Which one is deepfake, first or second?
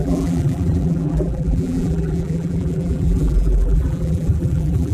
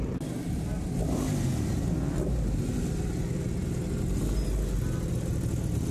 first